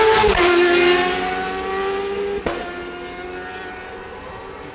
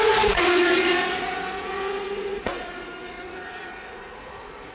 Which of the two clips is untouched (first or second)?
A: first